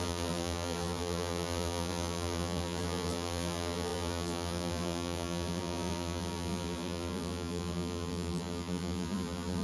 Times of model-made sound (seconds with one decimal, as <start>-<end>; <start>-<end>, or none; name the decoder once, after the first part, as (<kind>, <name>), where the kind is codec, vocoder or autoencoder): 0.0-9.6 (vocoder, BigVGAN v2)